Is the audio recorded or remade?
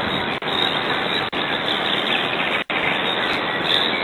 recorded